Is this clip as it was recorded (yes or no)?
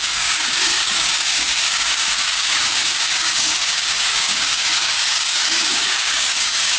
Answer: no